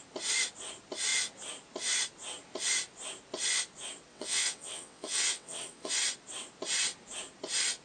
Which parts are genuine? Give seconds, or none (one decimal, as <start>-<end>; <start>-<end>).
0.0-4.1; 5.9-7.8